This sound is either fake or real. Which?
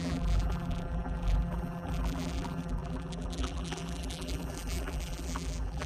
fake